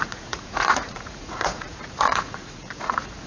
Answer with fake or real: fake